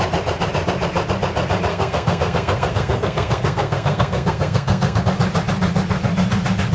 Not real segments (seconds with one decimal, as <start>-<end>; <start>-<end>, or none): 1.7-5.0